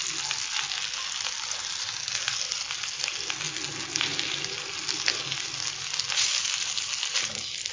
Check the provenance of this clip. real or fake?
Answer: real